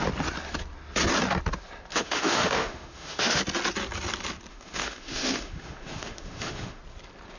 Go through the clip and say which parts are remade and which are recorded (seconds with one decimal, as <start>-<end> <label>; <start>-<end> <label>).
0.0-1.9 recorded; 1.9-3.4 remade; 3.4-4.5 recorded; 4.5-6.8 remade; 6.8-7.4 recorded